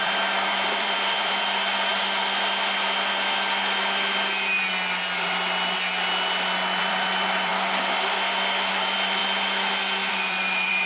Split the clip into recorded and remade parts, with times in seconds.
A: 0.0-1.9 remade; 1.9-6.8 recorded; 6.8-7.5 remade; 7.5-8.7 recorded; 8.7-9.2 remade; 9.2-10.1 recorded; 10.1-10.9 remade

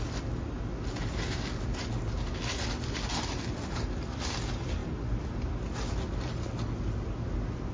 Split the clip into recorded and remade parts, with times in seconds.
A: 0.0-7.7 recorded